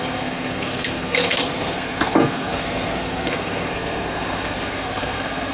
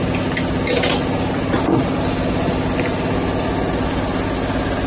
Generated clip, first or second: first